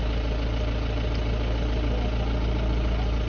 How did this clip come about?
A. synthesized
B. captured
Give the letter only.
B